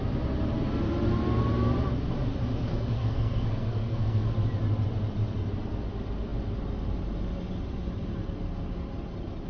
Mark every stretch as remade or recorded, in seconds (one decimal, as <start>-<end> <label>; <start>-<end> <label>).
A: 0.0-2.7 recorded; 2.7-4.3 remade; 4.3-9.5 recorded